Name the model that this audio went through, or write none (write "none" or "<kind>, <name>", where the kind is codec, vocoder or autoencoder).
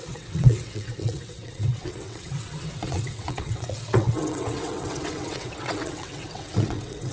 vocoder, WaveNeXt